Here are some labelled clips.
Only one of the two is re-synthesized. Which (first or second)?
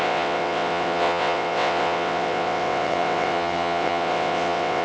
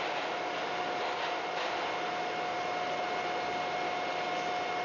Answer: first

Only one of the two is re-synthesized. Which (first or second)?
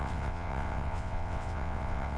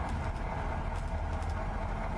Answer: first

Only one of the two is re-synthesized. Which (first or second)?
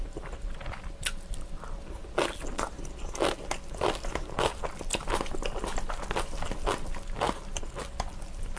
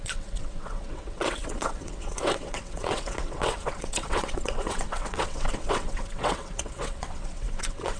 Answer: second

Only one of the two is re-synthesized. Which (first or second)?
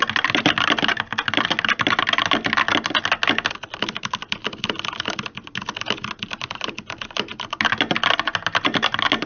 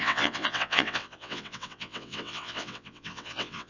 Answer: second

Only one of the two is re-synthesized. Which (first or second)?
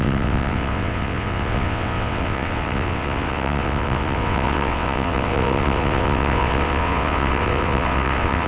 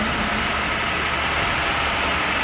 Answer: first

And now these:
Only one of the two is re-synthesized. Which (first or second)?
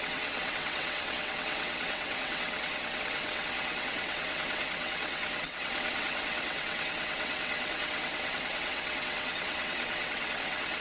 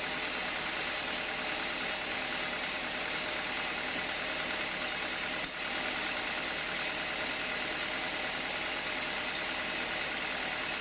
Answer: first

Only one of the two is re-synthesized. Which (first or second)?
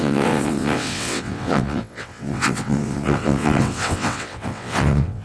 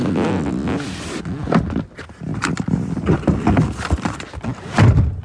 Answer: first